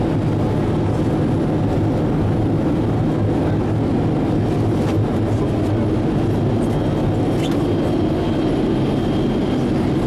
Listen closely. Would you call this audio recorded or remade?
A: recorded